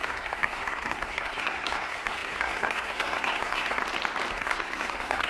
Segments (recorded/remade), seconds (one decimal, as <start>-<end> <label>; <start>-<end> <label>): 0.0-3.8 remade; 3.8-4.3 recorded; 4.3-5.3 remade

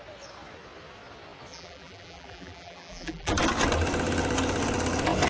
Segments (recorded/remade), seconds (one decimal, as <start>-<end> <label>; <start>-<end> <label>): 0.0-1.5 recorded; 1.5-3.3 remade; 3.3-5.3 recorded

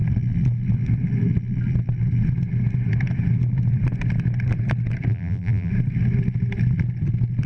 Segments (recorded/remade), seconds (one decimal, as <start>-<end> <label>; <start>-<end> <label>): 0.0-5.1 recorded; 5.1-5.7 remade; 5.7-7.5 recorded

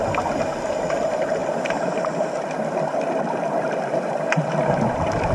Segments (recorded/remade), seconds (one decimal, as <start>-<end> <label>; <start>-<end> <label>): 0.0-1.4 recorded; 1.4-2.0 remade; 2.0-2.9 recorded; 2.9-4.1 remade; 4.1-5.3 recorded

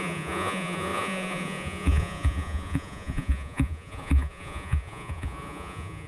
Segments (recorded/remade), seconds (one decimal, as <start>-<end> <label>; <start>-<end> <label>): 0.0-6.1 remade

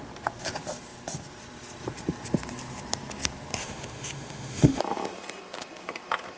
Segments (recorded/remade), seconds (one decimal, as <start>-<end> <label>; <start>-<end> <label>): 0.0-3.6 recorded; 3.6-4.8 remade; 4.8-6.4 recorded

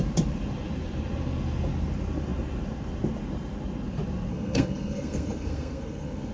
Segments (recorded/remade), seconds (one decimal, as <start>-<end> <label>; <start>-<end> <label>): 0.0-4.3 recorded; 4.3-6.3 remade

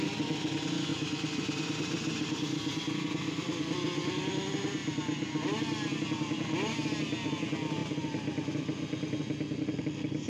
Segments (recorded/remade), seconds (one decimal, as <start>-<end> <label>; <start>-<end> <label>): 0.0-0.9 recorded; 0.9-3.6 remade; 3.6-10.3 recorded